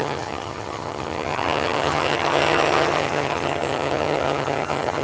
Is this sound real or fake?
fake